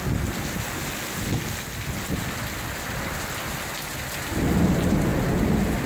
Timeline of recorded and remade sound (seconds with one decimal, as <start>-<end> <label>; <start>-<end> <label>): 0.0-5.9 recorded